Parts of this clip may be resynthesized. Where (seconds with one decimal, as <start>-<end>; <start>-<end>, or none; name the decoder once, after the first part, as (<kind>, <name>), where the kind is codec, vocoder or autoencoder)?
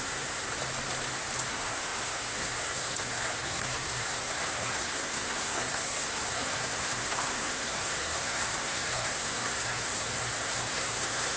0.0-0.5 (codec, SNAC); 1.5-11.4